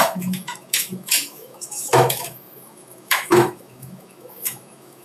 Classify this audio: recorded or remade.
remade